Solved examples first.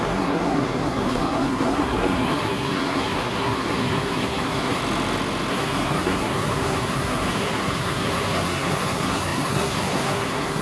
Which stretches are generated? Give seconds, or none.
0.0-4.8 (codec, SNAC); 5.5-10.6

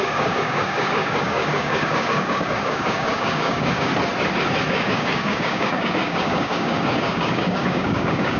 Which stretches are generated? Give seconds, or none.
0.0-3.9 (codec, DAC); 4.7-8.4

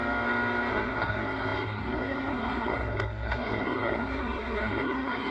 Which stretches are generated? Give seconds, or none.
0.7-5.3 (codec, SNAC)

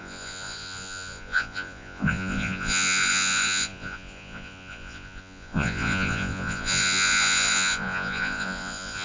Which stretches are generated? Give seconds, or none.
0.0-9.0 (vocoder, Vocos)

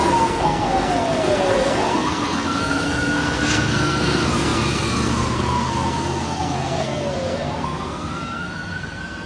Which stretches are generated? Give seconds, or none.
0.0-9.3 (codec, SNAC)

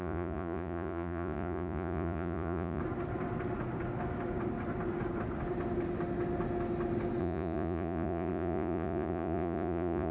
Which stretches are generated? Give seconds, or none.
0.0-2.8 (vocoder, Vocos); 7.2-10.1